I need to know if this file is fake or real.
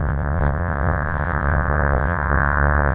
fake